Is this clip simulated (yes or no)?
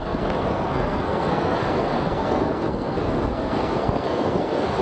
yes